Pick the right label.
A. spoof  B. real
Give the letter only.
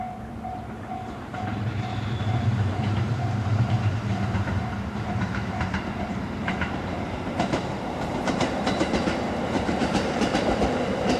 A